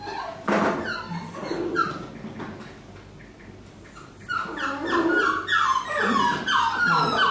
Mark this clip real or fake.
real